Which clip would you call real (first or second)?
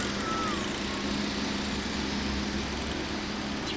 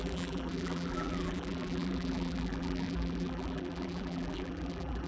first